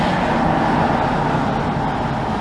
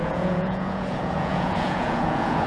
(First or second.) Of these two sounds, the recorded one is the first